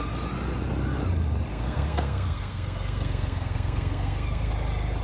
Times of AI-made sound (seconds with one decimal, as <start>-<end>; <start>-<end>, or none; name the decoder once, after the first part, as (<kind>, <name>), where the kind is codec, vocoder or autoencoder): 1.5-4.5 (codec, SNAC)